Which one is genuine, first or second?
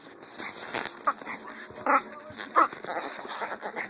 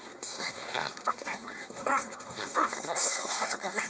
first